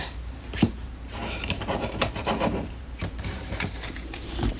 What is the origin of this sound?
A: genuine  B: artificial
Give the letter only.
B